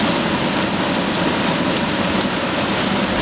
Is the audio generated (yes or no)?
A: no